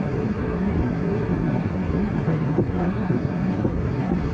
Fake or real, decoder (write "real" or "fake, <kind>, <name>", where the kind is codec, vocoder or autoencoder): fake, codec, SNAC